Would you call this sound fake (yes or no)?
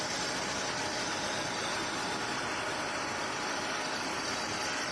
no